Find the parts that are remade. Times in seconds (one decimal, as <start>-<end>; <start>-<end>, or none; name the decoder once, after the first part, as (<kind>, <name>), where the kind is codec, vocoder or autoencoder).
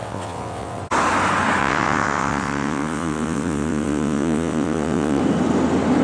0.0-0.8 (vocoder, WaveNeXt); 1.6-5.2